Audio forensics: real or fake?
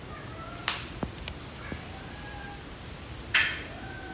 real